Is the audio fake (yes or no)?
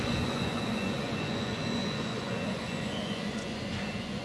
yes